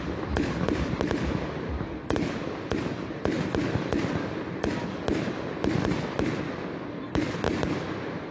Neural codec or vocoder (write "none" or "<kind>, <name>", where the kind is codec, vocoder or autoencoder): none